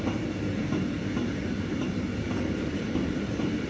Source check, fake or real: fake